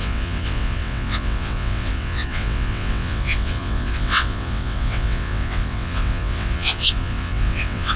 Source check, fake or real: fake